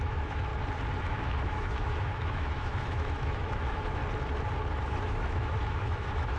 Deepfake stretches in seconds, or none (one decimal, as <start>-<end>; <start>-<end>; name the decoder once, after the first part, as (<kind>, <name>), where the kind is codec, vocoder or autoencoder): 0.0-0.5 (autoencoder, DAC-VAE); 1.0-4.0; 4.8-6.4